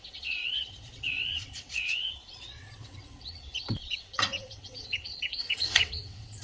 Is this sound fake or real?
fake